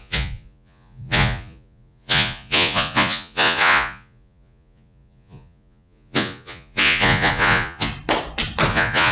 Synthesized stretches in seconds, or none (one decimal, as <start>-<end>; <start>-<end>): 0.0-7.9; 8.7-9.1